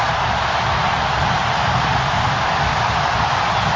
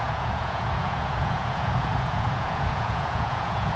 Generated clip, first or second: second